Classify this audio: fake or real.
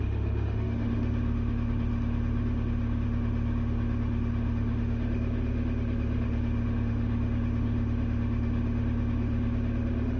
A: fake